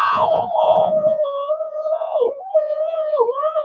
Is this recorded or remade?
remade